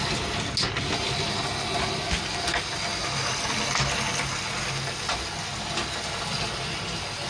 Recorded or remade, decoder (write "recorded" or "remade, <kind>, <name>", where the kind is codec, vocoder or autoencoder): recorded